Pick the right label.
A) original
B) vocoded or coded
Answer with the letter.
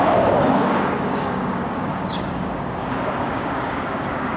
B